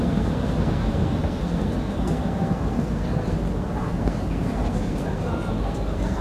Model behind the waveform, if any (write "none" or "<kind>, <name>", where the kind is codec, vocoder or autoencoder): codec, SNAC